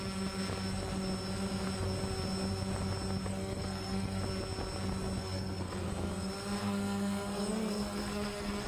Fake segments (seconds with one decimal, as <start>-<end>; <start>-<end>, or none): 3.3-4.2; 5.2-5.9; 6.6-8.7